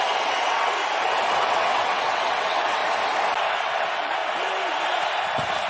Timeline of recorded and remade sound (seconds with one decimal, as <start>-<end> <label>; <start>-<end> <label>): 0.0-0.8 remade; 0.8-1.3 recorded; 1.3-2.8 remade; 2.8-3.5 recorded; 3.5-4.2 remade; 4.2-5.7 recorded

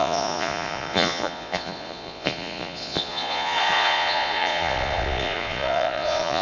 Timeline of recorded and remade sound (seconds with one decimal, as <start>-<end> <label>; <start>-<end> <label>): 0.0-6.4 remade

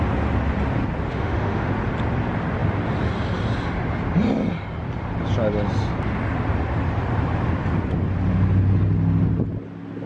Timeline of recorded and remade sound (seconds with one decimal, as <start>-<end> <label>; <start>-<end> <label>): 0.0-1.1 recorded; 1.1-1.7 remade; 1.7-10.1 recorded

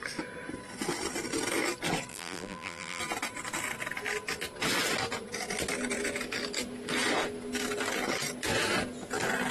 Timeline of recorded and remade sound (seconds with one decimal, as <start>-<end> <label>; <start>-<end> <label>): 0.0-2.1 recorded; 2.1-3.0 remade; 3.0-9.5 recorded

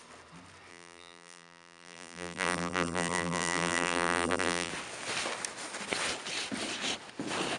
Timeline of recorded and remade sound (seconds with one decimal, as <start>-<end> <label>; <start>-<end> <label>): 0.0-0.7 recorded; 0.7-4.7 remade; 4.7-7.6 recorded

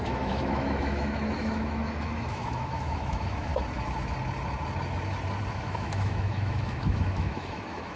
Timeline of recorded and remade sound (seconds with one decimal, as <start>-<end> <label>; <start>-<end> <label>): 0.0-3.5 remade; 3.5-5.5 recorded; 5.5-8.0 remade

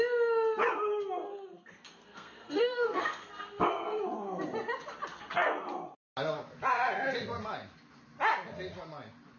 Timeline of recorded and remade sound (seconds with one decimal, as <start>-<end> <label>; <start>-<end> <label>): 0.0-1.3 recorded; 1.3-4.0 remade; 4.0-9.4 recorded

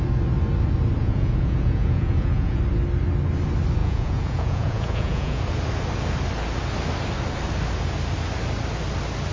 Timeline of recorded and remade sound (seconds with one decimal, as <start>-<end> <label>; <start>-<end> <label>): 0.0-1.0 recorded; 1.0-2.6 remade; 2.6-3.8 recorded; 3.8-5.4 remade; 5.4-9.3 recorded